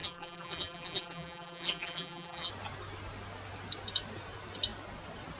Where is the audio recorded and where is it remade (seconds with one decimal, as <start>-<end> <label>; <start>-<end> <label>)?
0.0-2.5 remade; 2.5-5.4 recorded